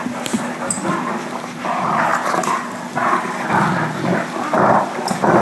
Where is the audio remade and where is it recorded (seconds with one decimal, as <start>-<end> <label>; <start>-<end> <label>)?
0.0-5.4 recorded